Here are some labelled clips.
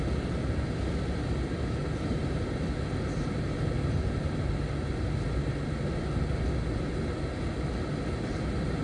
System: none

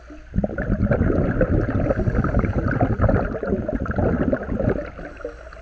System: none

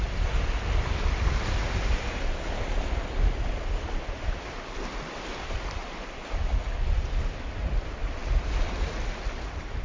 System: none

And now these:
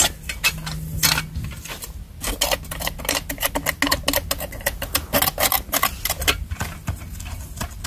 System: none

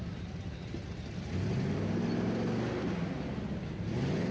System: none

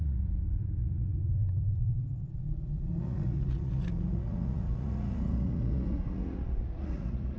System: vocoder, Vocos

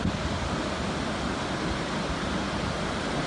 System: none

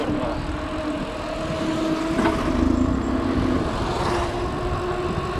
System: none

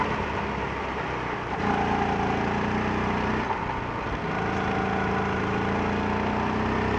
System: none